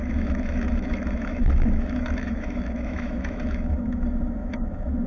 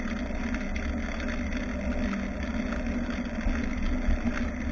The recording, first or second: second